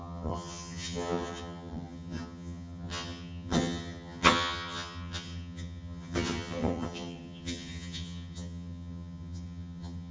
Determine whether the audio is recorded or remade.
remade